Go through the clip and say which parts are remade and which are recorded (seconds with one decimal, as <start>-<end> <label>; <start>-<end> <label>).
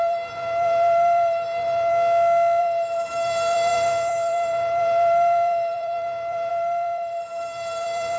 0.0-1.9 remade; 1.9-2.6 recorded; 2.6-8.2 remade